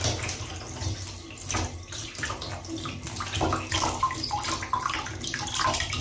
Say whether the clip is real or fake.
real